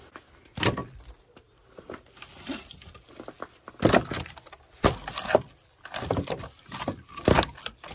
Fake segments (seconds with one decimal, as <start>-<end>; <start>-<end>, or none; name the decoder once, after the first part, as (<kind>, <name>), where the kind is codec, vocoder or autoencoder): none

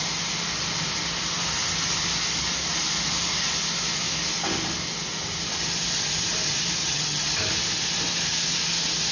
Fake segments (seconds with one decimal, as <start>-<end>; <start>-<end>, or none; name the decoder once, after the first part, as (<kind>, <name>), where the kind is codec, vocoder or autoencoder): 6.8-7.3 (vocoder, HiFi-GAN)

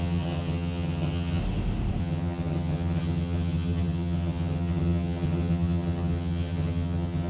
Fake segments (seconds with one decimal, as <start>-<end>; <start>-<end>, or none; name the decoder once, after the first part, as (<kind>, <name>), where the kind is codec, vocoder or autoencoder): 0.0-1.4 (vocoder, HiFi-GAN); 2.0-7.3

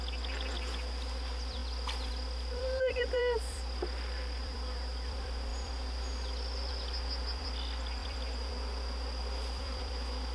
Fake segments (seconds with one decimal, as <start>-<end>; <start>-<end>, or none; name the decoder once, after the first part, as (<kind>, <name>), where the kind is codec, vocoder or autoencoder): 0.0-1.6 (vocoder, BigVGAN v2); 2.1-10.3

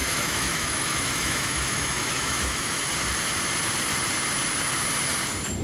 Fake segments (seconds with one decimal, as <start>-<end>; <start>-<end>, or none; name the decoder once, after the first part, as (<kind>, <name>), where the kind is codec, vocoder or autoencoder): 0.0-2.8 (autoencoder, DAC-VAE)

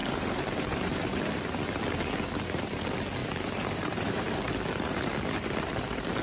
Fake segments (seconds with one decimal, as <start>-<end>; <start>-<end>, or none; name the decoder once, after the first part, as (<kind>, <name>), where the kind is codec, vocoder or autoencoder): 0.0-1.2 (vocoder, BigVGAN v2); 3.2-4.5